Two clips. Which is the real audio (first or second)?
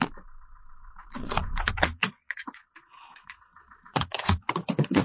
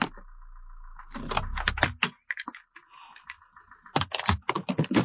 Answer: second